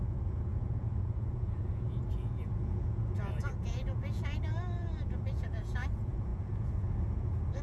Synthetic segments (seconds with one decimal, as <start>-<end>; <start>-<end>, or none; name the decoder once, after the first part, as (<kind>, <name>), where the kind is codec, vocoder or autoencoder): 0.0-7.6 (vocoder, Vocos)